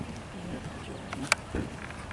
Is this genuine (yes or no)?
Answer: yes